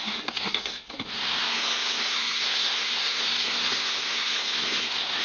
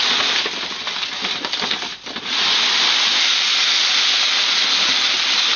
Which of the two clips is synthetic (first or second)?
first